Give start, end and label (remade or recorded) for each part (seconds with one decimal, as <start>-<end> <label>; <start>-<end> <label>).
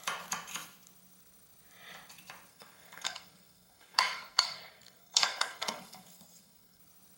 0.0-2.5 recorded; 2.5-6.8 remade; 6.8-7.2 recorded